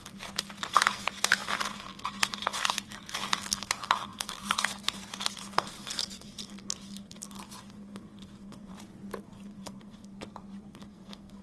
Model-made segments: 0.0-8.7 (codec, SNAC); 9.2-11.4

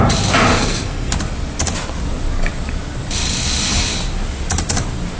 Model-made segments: 0.5-1.1 (codec, SNAC)

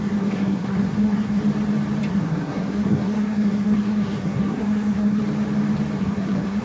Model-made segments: 0.0-1.4 (codec, SNAC); 2.1-5.2; 6.0-6.6

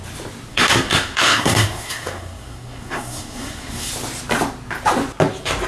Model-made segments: 0.5-3.9 (codec, SNAC)

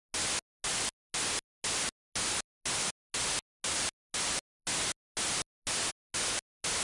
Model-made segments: none

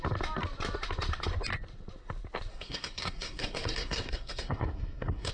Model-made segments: 2.5-5.3 (codec, SNAC)

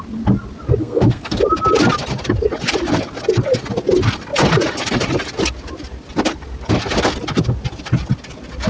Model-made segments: 0.8-1.4 (codec, SNAC)

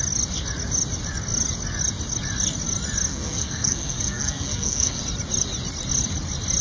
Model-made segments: 3.1-5.0 (codec, SNAC)